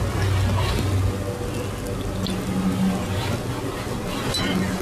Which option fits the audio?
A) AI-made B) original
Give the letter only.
B